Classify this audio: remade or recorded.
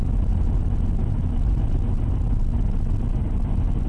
recorded